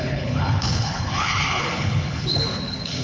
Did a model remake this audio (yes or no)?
yes